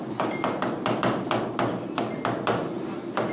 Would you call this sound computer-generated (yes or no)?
no